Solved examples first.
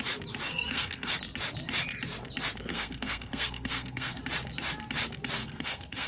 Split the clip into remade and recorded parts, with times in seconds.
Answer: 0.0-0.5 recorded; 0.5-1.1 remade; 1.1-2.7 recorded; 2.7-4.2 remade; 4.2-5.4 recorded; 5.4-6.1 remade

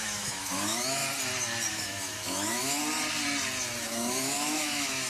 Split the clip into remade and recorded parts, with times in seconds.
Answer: 0.0-1.0 remade; 1.0-1.7 recorded; 1.7-2.8 remade; 2.8-3.8 recorded; 3.8-5.1 remade

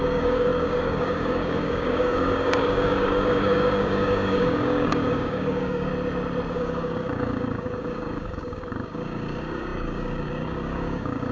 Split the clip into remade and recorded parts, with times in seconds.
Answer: 0.0-5.9 remade; 5.9-6.5 recorded; 6.5-11.3 remade

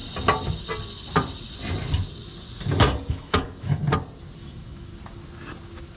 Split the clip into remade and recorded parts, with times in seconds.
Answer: 0.0-3.1 recorded; 3.1-3.8 remade; 3.8-4.4 recorded; 4.4-4.9 remade; 4.9-6.0 recorded

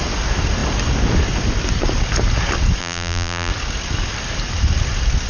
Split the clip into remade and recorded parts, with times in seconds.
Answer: 0.0-2.8 recorded; 2.8-3.5 remade; 3.5-5.3 recorded